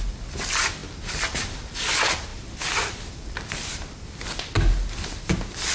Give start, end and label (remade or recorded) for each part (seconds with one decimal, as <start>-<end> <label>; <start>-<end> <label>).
0.0-5.7 recorded